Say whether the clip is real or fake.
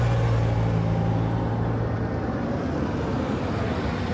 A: real